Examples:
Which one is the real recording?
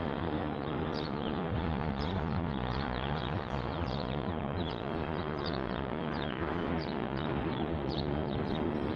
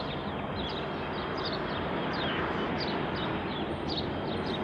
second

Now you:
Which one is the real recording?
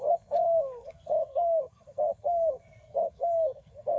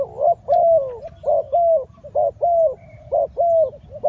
second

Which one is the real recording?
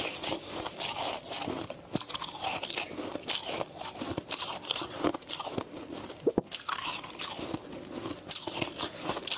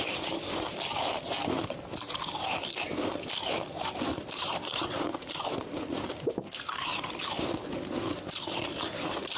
first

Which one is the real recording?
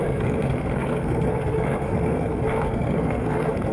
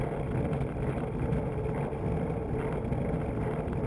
second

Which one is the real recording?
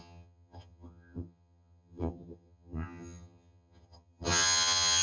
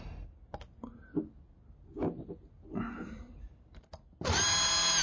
second